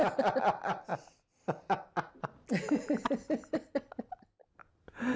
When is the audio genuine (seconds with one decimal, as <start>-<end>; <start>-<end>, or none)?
0.0-5.2